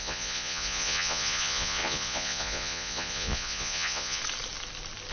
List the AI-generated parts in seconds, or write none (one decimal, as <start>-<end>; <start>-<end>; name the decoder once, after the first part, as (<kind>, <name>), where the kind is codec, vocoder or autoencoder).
0.0-4.2 (vocoder, Vocos)